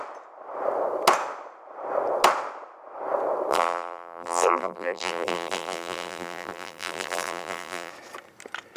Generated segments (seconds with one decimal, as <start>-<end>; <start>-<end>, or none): 3.5-7.9